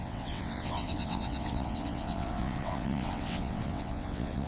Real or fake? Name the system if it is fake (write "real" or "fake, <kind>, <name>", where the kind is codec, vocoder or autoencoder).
fake, vocoder, WaveNeXt